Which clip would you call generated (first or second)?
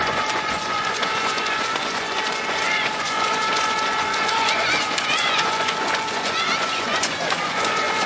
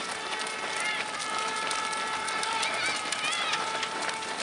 first